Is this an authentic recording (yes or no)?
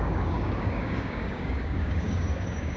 no